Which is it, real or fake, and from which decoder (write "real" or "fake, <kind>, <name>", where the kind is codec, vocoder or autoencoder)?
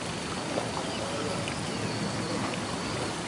real